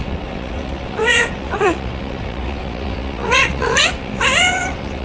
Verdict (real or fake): fake